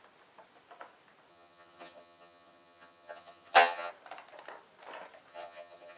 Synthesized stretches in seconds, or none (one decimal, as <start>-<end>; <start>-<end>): 1.3-3.9; 5.3-6.0